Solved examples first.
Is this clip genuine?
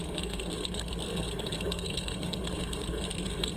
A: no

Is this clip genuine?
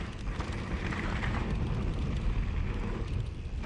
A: yes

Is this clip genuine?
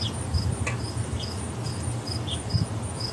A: yes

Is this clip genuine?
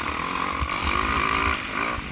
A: yes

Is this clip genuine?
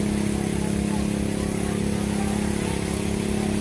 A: yes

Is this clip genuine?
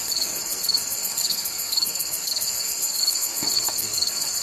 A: no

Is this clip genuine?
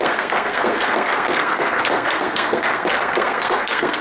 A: no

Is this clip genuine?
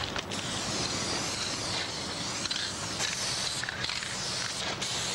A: yes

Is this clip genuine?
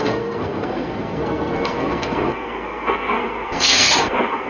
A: no